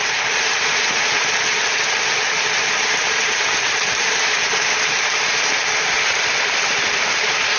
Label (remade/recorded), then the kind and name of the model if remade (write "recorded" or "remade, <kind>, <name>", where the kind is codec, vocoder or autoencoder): remade, vocoder, BigVGAN v2